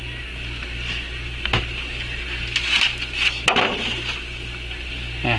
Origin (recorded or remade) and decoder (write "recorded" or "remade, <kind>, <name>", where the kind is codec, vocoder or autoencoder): recorded